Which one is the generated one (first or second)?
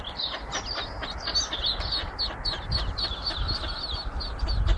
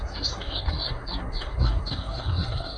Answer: second